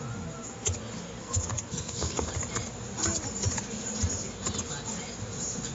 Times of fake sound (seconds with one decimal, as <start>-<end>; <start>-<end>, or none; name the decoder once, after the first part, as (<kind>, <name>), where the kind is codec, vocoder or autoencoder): 1.2-2.3 (codec, SNAC)